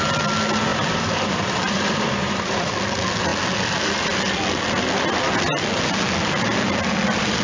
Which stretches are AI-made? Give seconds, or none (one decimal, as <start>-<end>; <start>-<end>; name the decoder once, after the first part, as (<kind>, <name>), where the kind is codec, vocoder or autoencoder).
0.7-2.7 (vocoder, BigVGAN v2)